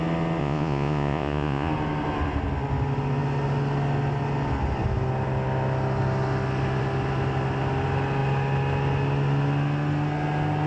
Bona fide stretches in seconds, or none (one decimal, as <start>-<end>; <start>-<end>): 0.0-0.4; 1.7-10.7